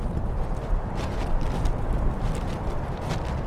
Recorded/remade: recorded